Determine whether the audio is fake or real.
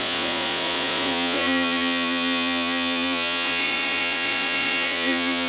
fake